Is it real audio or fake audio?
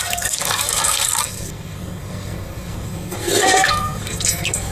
fake